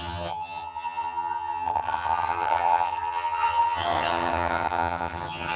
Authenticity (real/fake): fake